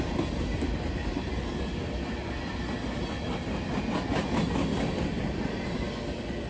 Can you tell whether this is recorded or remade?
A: recorded